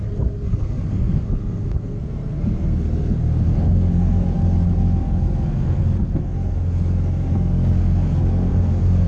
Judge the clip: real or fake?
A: fake